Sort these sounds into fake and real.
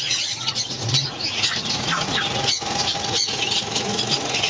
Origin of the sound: fake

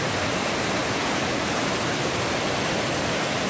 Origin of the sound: real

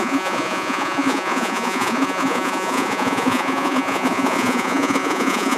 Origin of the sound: fake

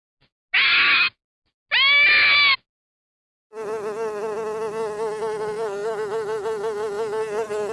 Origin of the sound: real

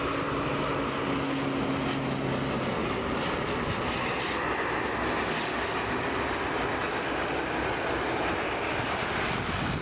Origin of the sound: real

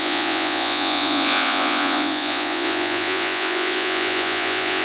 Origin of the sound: fake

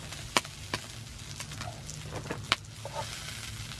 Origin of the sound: real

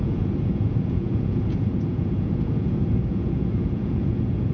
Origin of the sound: fake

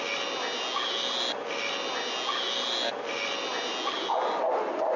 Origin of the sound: real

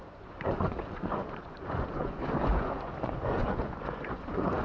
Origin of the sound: fake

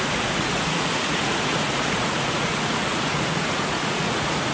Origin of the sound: fake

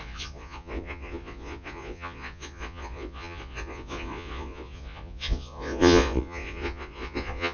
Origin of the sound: fake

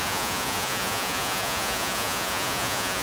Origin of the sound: fake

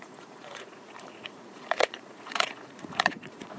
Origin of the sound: fake